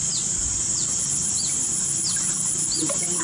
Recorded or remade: recorded